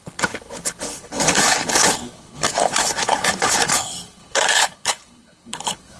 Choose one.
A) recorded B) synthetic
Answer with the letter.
B